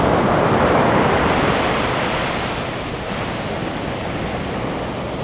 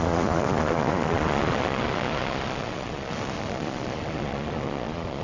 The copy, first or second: second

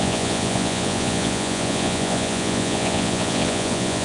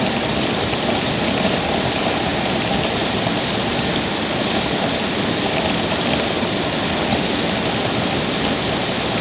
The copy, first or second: first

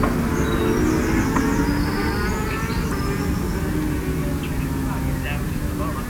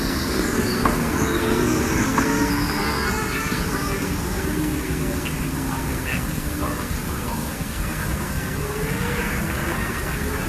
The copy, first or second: second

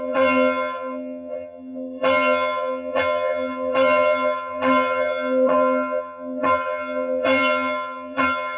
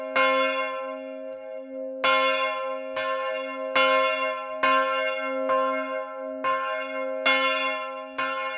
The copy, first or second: first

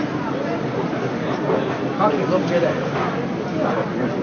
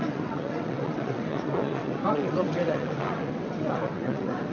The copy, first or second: second